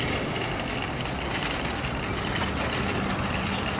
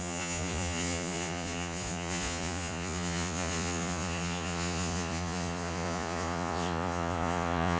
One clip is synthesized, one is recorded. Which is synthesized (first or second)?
second